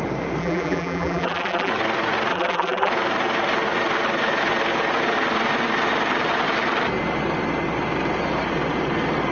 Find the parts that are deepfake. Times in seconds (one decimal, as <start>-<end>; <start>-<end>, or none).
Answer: 0.4-1.7; 2.3-2.9